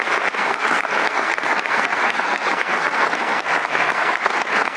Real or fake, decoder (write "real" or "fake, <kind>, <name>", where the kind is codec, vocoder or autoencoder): fake, codec, SNAC